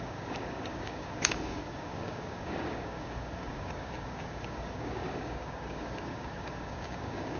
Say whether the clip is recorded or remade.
remade